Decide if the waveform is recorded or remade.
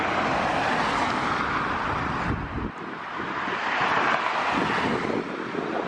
recorded